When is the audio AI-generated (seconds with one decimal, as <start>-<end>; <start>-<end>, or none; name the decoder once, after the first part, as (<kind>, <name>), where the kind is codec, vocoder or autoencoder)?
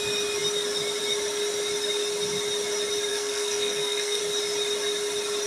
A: 3.1-4.2 (codec, SNAC)